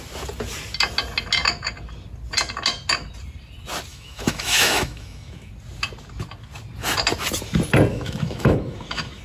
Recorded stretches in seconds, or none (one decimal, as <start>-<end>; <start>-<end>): 0.0-3.9; 5.5-7.9